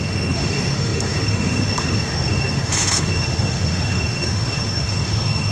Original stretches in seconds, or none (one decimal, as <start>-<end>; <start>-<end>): none